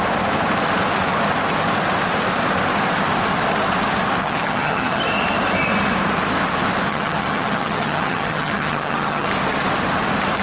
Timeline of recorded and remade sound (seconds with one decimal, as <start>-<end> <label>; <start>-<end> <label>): 0.0-4.2 recorded; 4.2-5.0 remade; 5.0-6.9 recorded; 6.9-9.3 remade; 9.3-10.4 recorded